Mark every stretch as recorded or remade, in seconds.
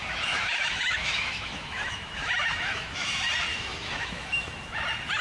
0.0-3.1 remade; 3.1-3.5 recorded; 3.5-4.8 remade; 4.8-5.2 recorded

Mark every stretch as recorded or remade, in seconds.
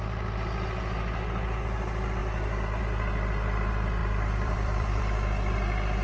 0.0-4.0 recorded; 4.0-5.0 remade; 5.0-6.0 recorded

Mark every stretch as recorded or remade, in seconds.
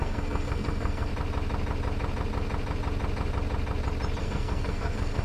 0.0-1.1 remade; 1.1-4.2 recorded; 4.2-5.2 remade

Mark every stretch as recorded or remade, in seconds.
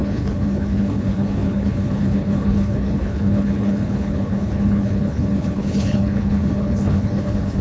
0.0-7.6 remade